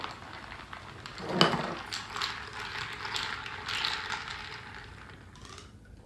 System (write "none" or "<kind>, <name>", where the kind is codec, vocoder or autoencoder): none